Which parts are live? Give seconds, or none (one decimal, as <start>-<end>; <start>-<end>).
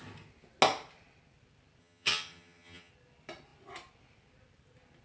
0.0-1.8; 2.9-5.0